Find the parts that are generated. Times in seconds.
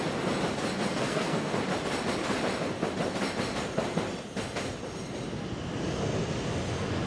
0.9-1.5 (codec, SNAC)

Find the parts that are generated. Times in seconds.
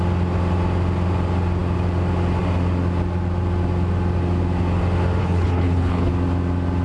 5.2-6.1 (codec, HILCodec)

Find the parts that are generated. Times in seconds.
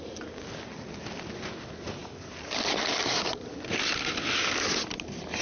none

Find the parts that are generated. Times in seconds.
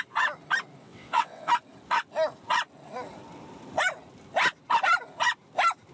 0.8-1.5 (vocoder, WaveNeXt)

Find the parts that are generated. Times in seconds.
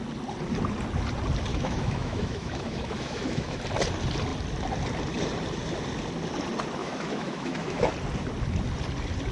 1.5-3.6 (autoencoder, DAC-VAE); 6.8-7.9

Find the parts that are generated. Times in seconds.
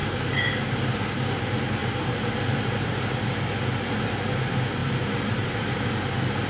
0.0-1.2 (vocoder, BigVGAN v2); 1.8-3.0; 4.8-6.5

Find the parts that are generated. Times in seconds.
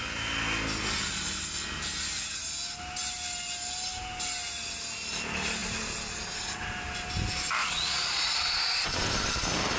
7.6-9.0 (vocoder, Vocos)